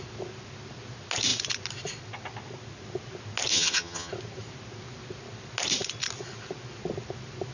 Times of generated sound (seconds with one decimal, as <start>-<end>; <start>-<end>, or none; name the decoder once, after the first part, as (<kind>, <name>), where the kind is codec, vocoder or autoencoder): 3.5-4.1 (vocoder, HiFi-GAN)